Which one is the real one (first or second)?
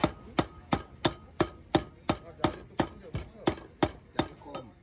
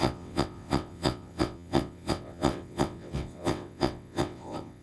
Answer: first